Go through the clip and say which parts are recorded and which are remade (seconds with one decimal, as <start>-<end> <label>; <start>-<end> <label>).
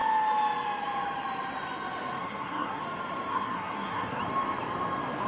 0.0-2.2 recorded; 2.2-2.8 remade; 2.8-3.3 recorded; 3.3-4.2 remade; 4.2-5.3 recorded